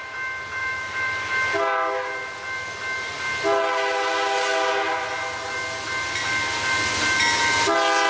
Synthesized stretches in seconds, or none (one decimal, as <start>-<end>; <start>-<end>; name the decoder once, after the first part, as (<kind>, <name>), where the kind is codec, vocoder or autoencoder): 0.6-1.3 (vocoder, BigVGAN v2)